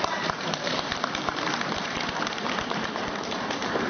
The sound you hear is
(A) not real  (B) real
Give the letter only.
A